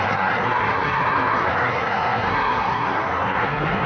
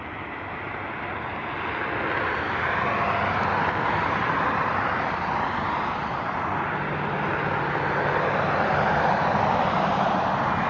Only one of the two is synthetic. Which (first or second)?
first